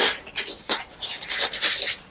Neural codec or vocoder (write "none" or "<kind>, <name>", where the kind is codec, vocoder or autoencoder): none